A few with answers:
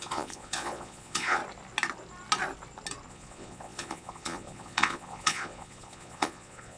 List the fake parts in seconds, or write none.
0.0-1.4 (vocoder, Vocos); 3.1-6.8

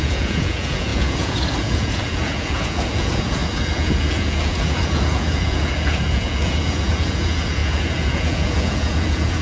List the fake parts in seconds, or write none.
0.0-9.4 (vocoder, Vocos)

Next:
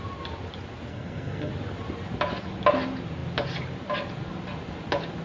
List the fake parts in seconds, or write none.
0.9-1.5 (codec, SNAC)

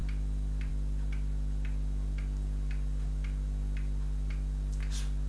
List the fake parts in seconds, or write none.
none

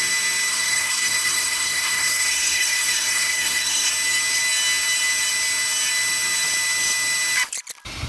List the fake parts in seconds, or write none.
0.5-3.9 (codec, SNAC)